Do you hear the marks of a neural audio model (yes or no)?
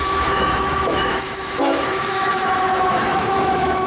yes